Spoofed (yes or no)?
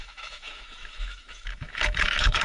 yes